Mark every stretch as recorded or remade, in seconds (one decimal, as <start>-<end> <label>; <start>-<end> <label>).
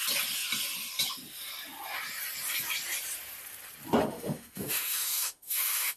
0.0-4.0 recorded; 4.0-6.0 remade